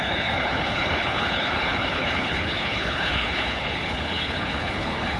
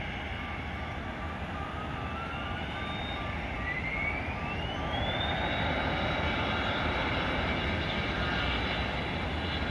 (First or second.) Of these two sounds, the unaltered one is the second